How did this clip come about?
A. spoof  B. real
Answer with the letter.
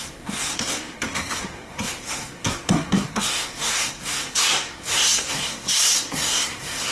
A